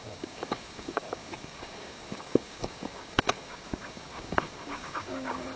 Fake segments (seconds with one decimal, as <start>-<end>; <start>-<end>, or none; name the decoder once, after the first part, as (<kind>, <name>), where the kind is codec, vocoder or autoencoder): 0.0-5.6 (codec, DAC)